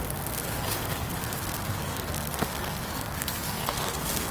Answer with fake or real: fake